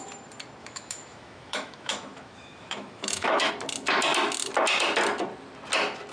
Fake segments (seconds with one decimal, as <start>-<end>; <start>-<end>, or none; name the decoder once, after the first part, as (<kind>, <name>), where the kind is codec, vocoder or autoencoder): 0.6-3.5 (autoencoder, DAC-VAE)